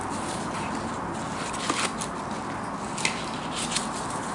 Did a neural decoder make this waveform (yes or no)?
no